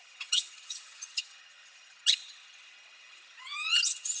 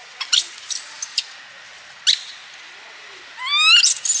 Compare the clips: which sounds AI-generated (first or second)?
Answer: first